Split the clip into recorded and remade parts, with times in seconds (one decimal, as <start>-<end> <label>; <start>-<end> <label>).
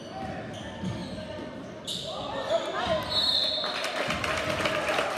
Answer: 0.0-5.2 recorded